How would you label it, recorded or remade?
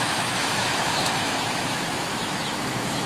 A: remade